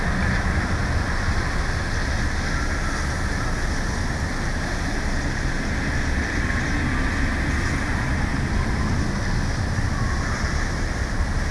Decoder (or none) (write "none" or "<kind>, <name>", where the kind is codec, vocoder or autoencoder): none